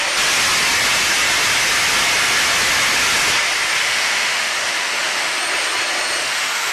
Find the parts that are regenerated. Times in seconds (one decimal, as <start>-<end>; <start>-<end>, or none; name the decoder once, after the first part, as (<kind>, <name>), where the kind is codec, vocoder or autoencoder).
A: 3.8-5.4 (autoencoder, DAC-VAE); 6.2-6.7